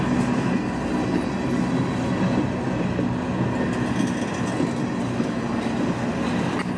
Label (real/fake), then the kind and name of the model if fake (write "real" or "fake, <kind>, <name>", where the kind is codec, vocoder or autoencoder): real